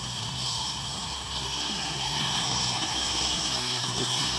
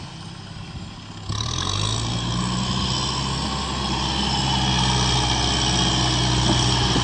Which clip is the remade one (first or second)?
first